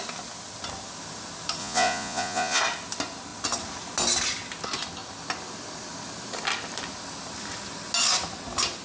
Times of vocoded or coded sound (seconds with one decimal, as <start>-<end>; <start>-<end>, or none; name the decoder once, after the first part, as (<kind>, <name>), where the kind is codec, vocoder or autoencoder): 1.6-2.6 (vocoder, Vocos)